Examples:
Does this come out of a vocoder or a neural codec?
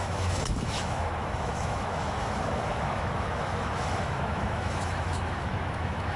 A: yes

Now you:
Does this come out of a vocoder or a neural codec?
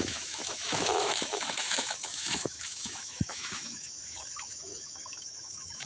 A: yes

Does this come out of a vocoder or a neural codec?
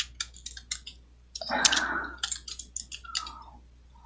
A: no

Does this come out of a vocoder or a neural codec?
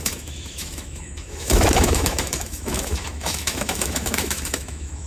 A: yes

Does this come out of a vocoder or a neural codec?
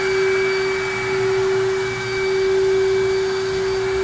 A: no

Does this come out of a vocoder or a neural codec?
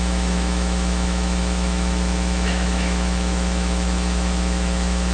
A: yes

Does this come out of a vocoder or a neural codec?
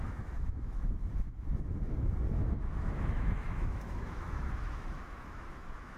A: yes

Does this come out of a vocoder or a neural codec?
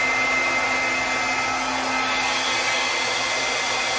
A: no